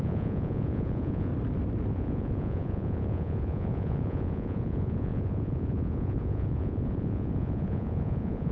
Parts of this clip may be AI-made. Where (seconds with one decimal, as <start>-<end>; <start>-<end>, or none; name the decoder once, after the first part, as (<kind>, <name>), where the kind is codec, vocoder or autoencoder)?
0.0-1.3 (vocoder, Vocos); 1.9-8.5